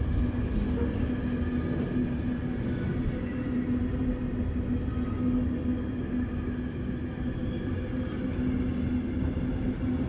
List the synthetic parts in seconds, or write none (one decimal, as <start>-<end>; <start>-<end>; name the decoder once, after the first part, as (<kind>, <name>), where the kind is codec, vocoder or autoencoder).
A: none